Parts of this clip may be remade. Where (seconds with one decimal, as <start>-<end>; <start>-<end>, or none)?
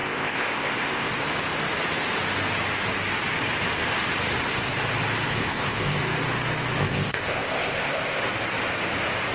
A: 0.0-1.1; 5.3-6.0; 6.8-8.2